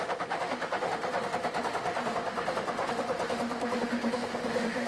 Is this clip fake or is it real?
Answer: fake